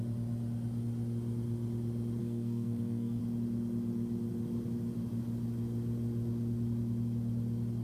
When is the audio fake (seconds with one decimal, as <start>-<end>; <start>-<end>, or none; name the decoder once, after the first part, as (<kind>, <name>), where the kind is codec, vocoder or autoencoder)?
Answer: 2.2-3.2 (codec, SNAC)